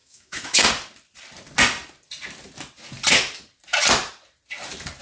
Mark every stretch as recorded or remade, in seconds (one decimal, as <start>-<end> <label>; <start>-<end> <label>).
0.0-0.7 remade; 0.7-5.0 recorded